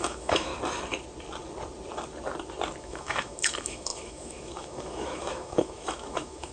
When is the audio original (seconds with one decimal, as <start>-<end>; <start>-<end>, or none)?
0.5-2.8